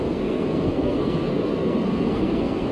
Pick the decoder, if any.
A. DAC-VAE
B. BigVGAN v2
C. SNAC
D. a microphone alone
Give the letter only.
C